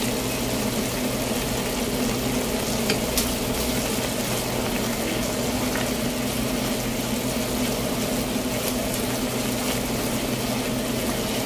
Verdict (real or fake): real